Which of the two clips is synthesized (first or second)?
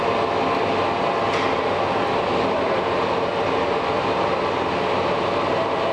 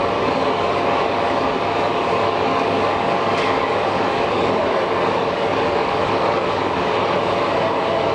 second